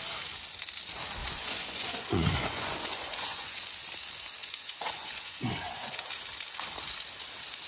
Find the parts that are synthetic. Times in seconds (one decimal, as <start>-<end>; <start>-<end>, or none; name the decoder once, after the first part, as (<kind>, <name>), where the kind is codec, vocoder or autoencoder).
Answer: 1.2-3.7 (vocoder, Vocos); 4.4-6.0